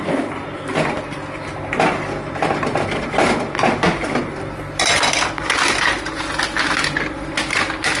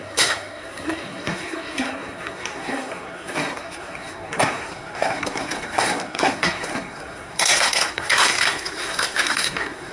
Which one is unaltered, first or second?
first